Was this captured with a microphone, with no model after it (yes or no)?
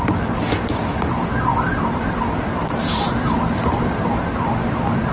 no